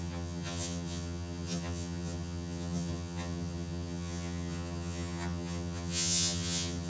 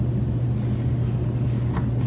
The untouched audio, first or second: second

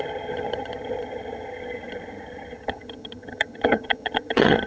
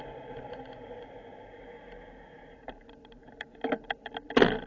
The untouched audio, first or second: second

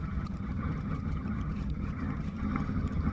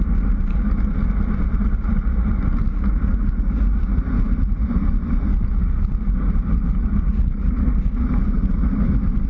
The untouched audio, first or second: second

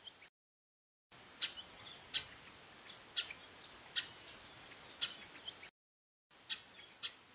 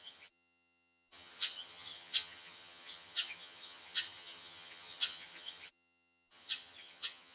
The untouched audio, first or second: first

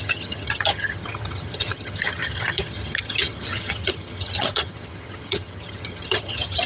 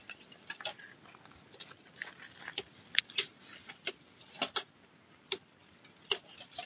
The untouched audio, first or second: second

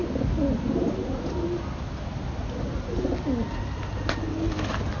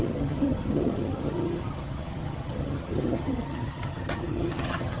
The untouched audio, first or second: first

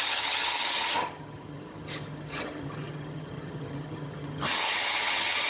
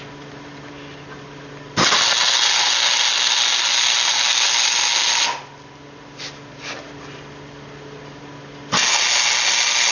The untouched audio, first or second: second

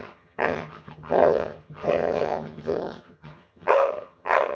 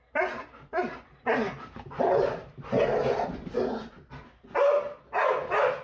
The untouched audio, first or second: second